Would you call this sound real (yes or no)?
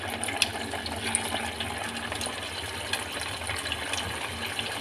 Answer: yes